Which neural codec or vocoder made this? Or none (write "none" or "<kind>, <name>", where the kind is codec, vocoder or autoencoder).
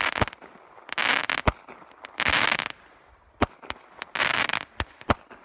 none